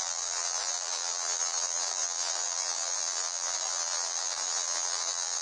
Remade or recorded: remade